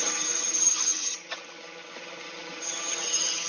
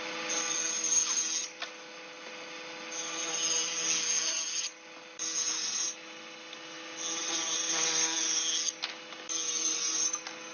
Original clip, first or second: second